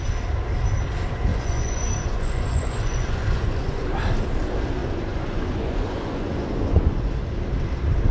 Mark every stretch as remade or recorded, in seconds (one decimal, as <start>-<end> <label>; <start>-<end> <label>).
0.0-1.3 recorded; 1.3-3.9 remade; 3.9-4.8 recorded; 4.8-7.1 remade; 7.1-8.1 recorded